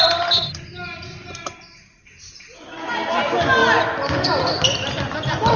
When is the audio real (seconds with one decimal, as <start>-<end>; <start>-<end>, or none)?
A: 0.0-5.6